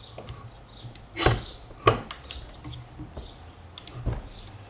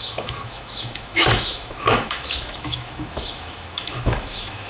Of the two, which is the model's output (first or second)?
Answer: second